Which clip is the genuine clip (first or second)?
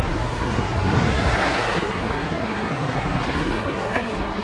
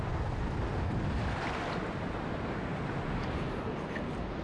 second